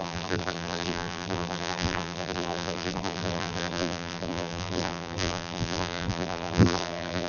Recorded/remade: remade